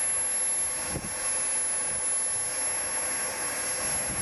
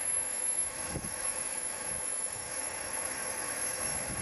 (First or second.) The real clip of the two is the first